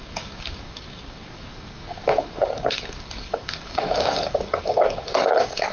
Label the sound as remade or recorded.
remade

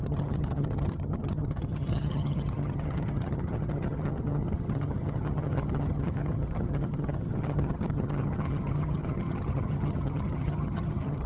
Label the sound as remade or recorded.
remade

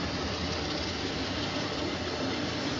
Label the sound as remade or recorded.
recorded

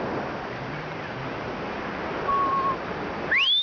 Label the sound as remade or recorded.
recorded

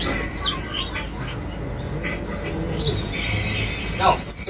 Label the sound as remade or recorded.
recorded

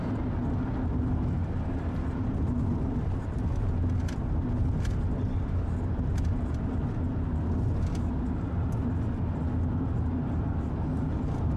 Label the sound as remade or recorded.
recorded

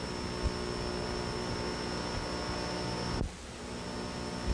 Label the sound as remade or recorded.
recorded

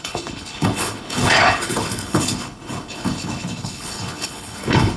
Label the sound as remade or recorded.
remade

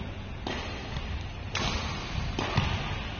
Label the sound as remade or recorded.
recorded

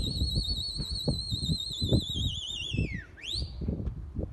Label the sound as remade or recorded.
recorded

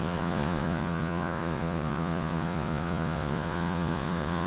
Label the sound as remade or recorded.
remade